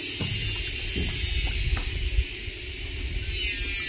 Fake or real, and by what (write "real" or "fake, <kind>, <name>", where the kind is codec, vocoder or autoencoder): real